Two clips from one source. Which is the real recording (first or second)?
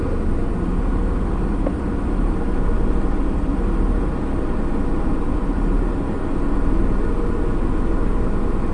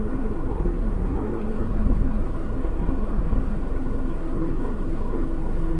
first